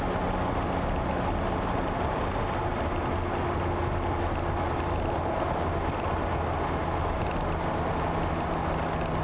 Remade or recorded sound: recorded